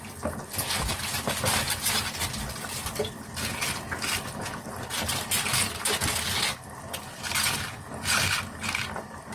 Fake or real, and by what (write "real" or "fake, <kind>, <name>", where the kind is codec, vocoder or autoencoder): real